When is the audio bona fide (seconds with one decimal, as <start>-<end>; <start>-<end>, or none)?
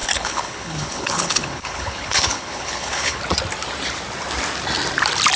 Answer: 3.2-5.4